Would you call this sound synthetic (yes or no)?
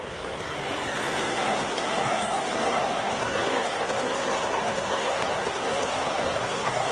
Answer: yes